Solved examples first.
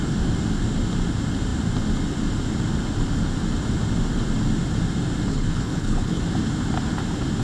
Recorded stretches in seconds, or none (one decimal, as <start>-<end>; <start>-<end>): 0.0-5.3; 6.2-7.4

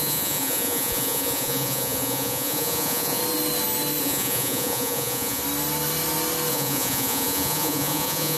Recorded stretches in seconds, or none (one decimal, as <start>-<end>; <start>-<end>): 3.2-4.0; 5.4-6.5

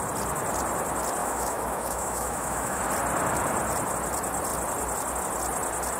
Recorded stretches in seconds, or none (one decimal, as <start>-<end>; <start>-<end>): 0.0-1.2; 2.8-6.0